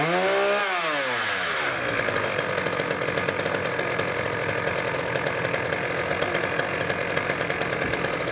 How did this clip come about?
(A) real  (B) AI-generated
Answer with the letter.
A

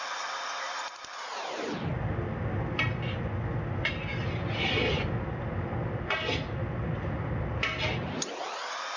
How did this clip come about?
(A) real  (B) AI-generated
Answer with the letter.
A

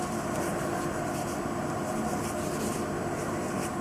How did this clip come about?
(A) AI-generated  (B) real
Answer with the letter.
B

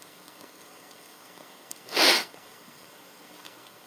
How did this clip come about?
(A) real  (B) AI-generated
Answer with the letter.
B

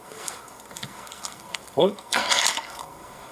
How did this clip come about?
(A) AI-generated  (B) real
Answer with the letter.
A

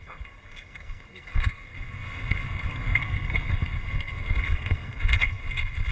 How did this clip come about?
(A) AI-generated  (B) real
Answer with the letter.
A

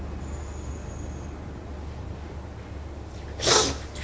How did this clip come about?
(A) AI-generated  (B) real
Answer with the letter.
B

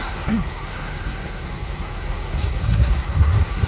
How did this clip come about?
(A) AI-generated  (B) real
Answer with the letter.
A